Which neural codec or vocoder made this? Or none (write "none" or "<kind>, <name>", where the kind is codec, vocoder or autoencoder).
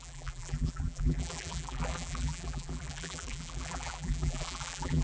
vocoder, BigVGAN v2